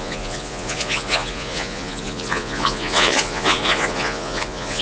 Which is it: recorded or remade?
remade